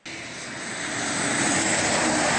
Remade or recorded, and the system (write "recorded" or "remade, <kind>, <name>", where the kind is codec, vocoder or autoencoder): recorded